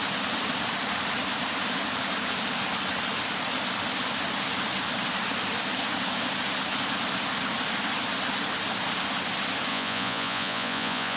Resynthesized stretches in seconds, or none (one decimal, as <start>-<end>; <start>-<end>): 9.7-11.2